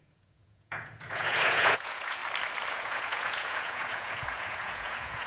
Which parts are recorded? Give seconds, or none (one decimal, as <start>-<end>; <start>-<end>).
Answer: 2.2-2.7